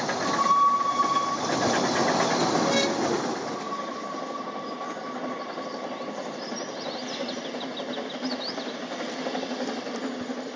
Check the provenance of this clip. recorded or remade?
recorded